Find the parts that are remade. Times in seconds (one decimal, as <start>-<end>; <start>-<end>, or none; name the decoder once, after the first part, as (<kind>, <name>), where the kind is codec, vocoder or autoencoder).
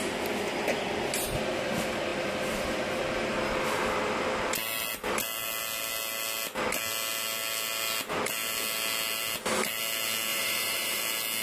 10.3-11.0 (vocoder, BigVGAN v2)